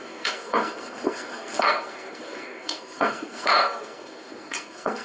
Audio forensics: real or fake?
fake